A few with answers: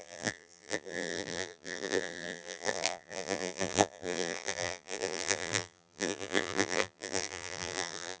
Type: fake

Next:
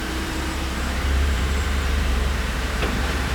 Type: fake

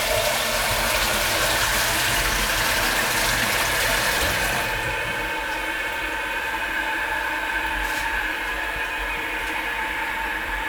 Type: fake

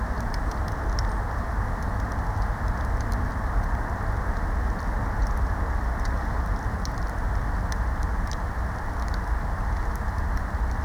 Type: real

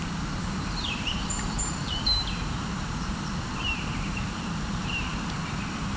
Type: fake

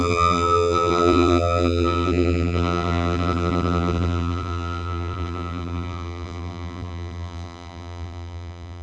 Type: fake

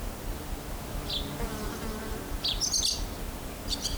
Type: real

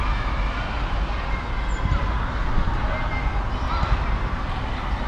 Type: real